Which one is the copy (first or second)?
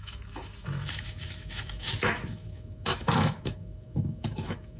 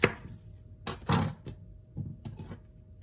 first